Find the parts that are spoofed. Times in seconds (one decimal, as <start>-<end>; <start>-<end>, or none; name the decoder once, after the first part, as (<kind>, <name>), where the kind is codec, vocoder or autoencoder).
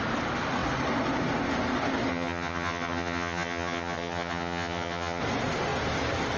2.1-5.2 (vocoder, HiFi-GAN)